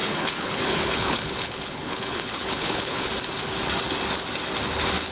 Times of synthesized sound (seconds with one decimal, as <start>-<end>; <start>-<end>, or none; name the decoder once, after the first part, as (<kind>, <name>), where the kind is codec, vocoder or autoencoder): 0.0-3.1 (codec, HILCodec)